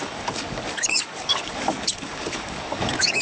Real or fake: fake